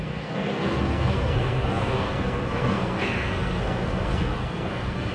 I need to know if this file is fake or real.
fake